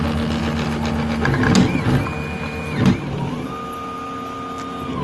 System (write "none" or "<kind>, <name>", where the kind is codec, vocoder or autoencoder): none